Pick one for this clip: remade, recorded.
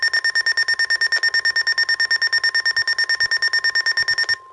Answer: recorded